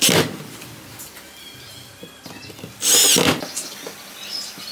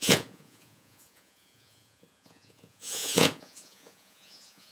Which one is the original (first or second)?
first